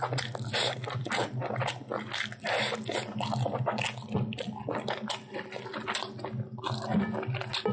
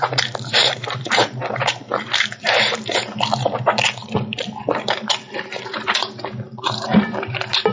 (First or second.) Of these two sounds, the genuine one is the first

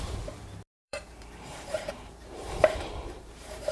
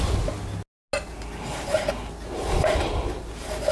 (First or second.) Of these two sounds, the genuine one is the second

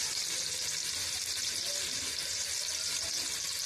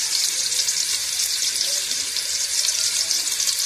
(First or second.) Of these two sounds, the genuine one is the first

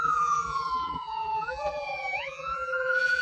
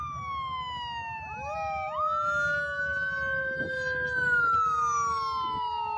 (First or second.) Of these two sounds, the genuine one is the second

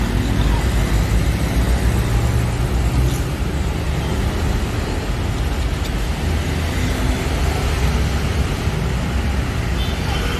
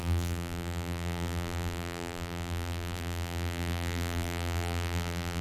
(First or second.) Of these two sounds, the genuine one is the first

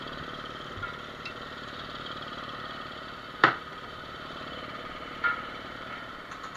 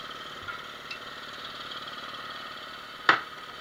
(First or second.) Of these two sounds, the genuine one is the second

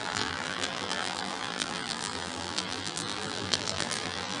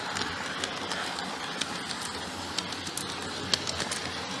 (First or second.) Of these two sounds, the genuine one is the second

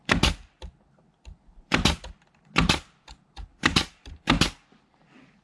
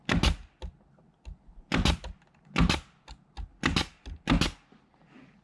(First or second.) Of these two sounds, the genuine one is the second